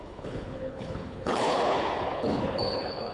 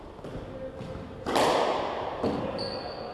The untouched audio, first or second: second